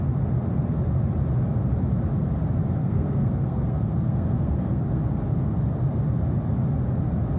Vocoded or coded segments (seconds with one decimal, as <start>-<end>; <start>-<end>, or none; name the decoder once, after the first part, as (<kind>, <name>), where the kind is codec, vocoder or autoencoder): 2.8-5.0 (codec, SNAC)